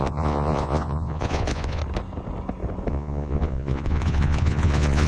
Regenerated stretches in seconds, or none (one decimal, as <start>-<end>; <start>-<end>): 0.0-1.8; 2.9-5.1